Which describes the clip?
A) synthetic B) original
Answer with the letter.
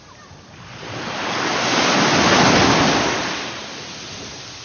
B